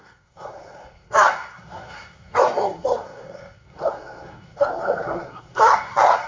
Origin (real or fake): fake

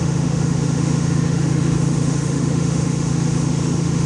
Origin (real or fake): fake